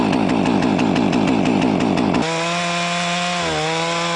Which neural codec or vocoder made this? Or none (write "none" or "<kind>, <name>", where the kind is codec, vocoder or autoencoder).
none